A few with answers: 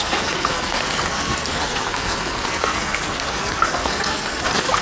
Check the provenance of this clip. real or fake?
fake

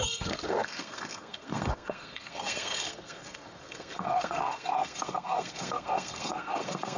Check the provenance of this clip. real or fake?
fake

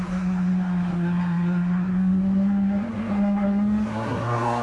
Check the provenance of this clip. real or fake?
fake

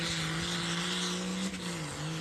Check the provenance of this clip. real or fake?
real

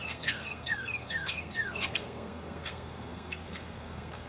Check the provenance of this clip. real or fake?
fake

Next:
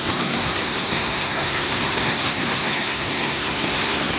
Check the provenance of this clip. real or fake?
fake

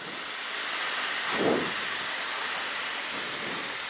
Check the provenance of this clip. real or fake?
real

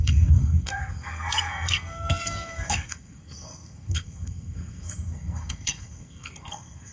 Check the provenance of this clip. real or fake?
fake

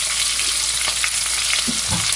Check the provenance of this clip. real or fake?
real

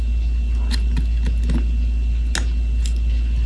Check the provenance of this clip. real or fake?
real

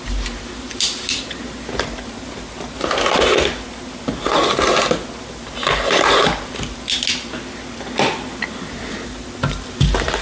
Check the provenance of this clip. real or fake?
real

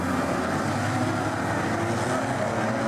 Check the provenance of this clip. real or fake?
real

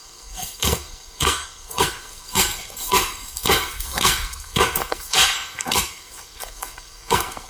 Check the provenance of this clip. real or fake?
fake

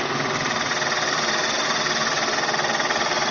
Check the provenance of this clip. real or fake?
real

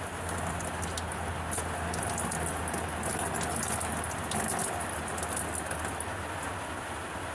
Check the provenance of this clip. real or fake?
real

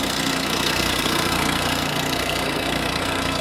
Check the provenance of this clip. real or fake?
fake